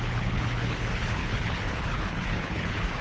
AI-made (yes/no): yes